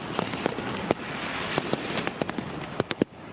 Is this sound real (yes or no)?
no